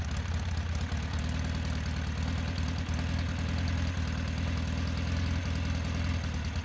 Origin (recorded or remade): recorded